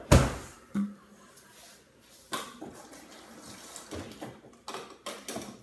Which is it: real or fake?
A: real